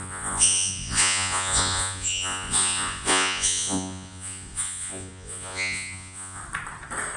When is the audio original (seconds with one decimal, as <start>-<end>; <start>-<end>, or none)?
6.4-7.2